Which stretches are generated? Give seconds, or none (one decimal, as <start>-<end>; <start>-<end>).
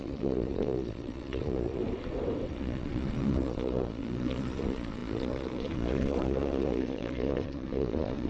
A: 0.0-1.8; 2.5-8.3